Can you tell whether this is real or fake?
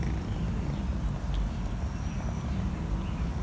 real